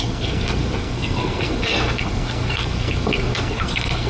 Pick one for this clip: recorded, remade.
remade